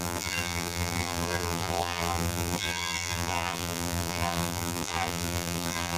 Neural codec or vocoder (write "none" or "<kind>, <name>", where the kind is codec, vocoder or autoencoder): vocoder, BigVGAN v2